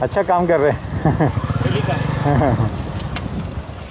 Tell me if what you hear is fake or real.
real